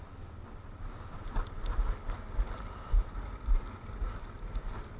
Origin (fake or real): real